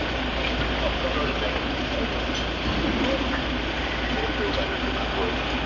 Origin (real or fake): real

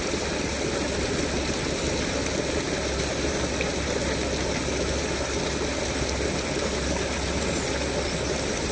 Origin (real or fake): real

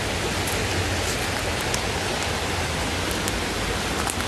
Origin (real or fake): real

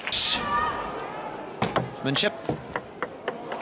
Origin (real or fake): real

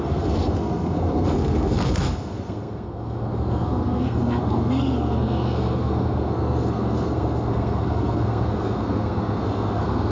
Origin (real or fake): fake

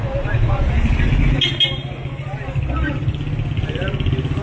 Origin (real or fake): real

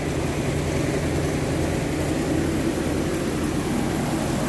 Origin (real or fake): real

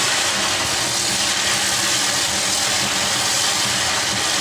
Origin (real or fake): real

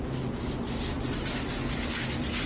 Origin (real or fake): real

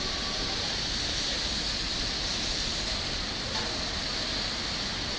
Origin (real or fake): real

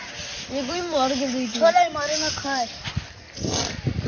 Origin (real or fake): real